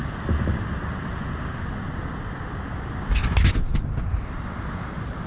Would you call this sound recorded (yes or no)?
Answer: yes